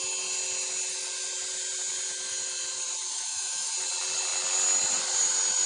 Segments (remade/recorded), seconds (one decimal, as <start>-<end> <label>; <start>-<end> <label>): 0.0-3.1 recorded; 3.1-3.7 remade; 3.7-5.7 recorded